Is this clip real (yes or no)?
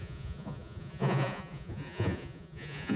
no